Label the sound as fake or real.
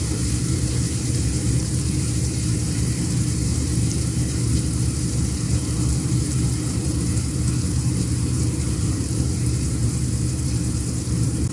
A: fake